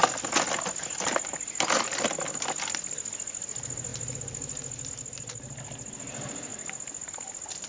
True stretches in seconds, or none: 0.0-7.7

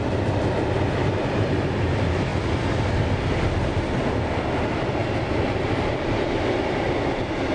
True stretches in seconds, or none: 0.0-1.2; 1.9-5.0; 6.6-7.5